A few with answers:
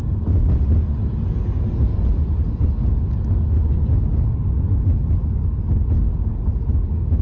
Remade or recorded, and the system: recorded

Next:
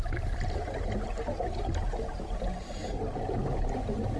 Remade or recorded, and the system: recorded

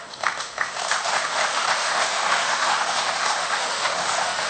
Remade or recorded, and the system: remade, autoencoder, DAC-VAE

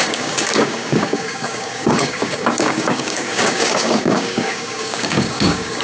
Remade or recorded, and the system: remade, codec, DAC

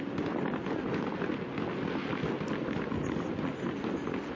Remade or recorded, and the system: recorded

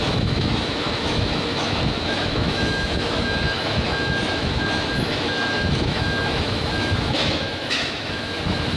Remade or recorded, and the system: remade, autoencoder, DAC-VAE